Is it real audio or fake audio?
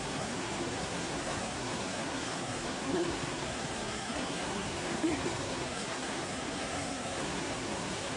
fake